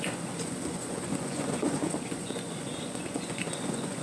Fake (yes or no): yes